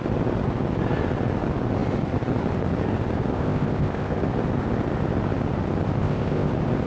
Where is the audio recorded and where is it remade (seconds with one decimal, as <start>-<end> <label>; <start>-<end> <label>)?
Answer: 0.0-3.3 recorded; 3.3-4.2 remade; 4.2-6.0 recorded; 6.0-6.5 remade; 6.5-6.9 recorded

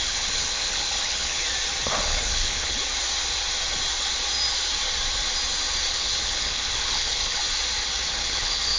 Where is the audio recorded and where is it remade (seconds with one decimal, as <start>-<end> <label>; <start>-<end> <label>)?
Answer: 0.0-1.4 remade; 1.4-2.0 recorded; 2.0-2.8 remade; 2.8-5.9 recorded; 5.9-7.4 remade; 7.4-8.1 recorded; 8.1-8.8 remade

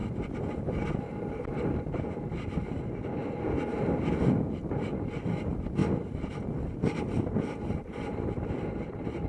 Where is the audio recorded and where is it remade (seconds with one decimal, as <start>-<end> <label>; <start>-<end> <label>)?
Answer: 0.0-1.6 remade; 1.6-5.8 recorded; 5.8-9.3 remade